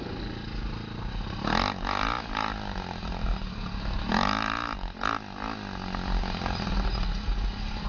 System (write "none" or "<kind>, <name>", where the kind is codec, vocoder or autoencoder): none